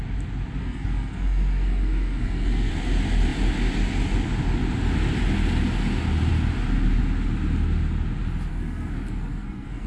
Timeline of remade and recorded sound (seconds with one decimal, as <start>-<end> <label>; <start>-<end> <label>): 0.0-0.6 recorded; 0.6-2.7 remade; 2.7-8.5 recorded; 8.5-9.9 remade